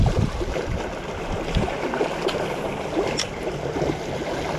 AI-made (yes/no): no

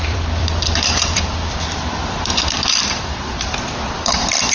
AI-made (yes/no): yes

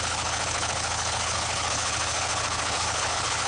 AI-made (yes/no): yes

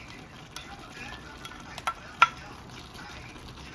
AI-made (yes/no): no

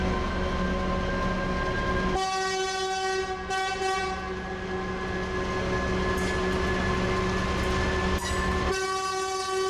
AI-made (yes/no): no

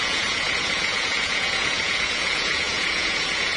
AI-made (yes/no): yes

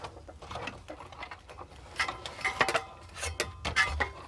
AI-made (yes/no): no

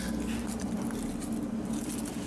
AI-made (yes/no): no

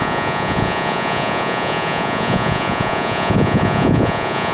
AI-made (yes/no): yes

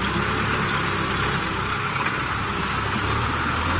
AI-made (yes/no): no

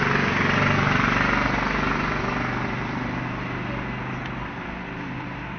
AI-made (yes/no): no